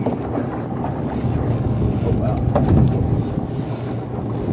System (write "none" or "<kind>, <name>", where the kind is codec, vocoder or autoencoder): none